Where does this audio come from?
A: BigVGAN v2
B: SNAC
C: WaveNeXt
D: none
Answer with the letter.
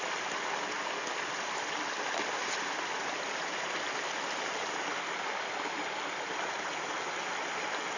D